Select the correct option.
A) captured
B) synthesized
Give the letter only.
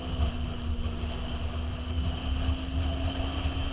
A